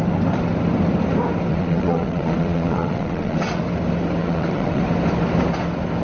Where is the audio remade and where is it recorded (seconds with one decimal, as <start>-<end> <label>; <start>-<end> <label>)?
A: 0.0-1.5 recorded; 1.5-3.6 remade; 3.6-4.2 recorded; 4.2-4.8 remade; 4.8-6.0 recorded